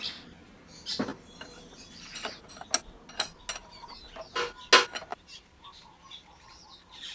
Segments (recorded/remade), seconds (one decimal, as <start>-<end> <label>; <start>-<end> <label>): 0.0-1.1 recorded; 1.1-2.5 remade; 2.5-3.6 recorded; 3.6-4.3 remade; 4.3-5.1 recorded; 5.1-5.7 remade; 5.7-7.1 recorded